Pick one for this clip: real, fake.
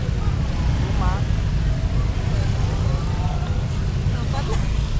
real